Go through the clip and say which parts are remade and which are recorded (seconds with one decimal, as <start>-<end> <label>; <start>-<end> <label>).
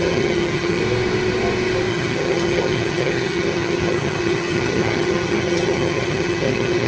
0.0-0.8 remade; 0.8-1.9 recorded; 1.9-6.9 remade